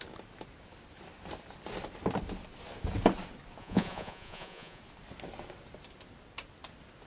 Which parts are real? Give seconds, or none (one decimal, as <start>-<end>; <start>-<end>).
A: 0.0-3.6; 4.8-7.1